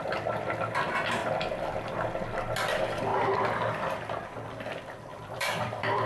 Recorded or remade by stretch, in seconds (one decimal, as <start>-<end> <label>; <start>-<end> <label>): 0.0-1.2 recorded; 1.2-1.9 remade; 1.9-5.1 recorded; 5.1-6.1 remade